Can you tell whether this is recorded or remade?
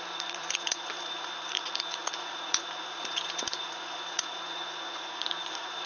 remade